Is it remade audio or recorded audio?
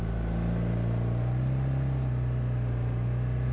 recorded